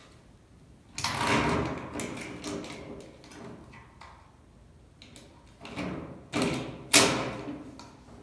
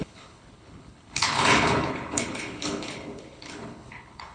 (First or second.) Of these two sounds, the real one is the first